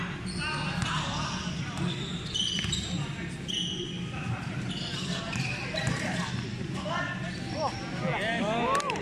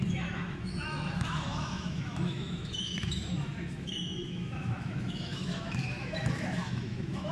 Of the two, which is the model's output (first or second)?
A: second